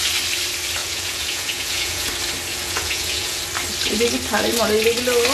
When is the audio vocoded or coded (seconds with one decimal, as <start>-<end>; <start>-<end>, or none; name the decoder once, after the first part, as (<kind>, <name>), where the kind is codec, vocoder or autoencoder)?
0.8-2.1 (vocoder, Vocos); 2.5-3.4